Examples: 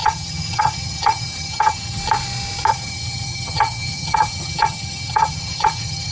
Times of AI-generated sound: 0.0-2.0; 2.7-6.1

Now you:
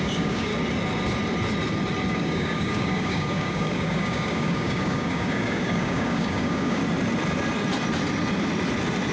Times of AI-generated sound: 0.0-0.5; 2.1-6.8

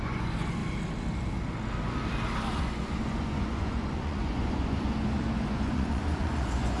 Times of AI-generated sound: 0.0-0.6; 2.6-6.8

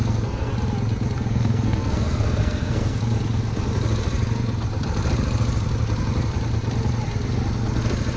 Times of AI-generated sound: 0.0-0.5; 1.3-3.0

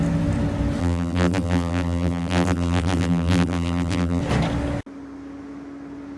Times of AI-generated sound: 0.8-4.2